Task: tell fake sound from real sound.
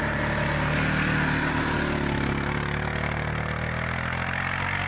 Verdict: real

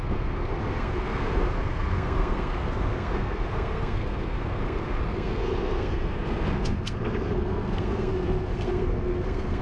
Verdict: fake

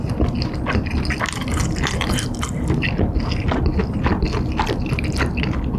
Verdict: real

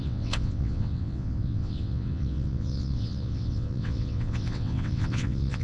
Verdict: fake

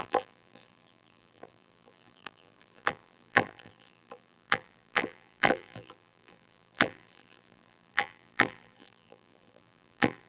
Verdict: fake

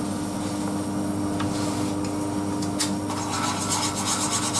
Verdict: real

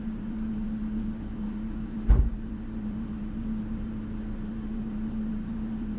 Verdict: fake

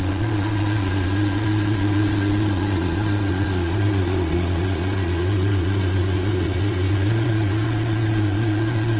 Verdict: fake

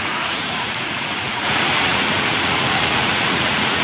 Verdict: fake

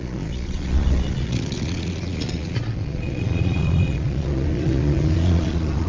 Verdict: fake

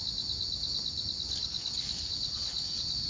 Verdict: real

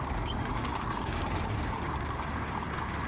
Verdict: fake